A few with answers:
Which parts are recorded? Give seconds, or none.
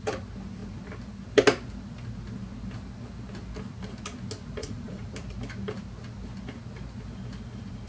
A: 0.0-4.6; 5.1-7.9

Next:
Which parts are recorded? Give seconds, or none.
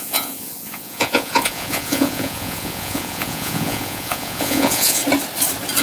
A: 5.0-5.8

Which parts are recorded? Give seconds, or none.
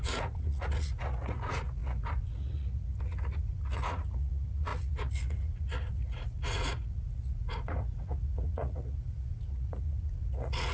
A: none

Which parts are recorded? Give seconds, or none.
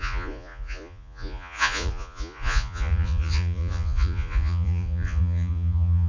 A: none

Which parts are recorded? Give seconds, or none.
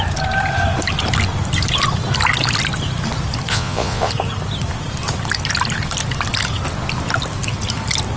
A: 0.0-3.5; 4.1-8.2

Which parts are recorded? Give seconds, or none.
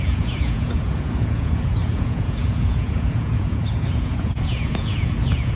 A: none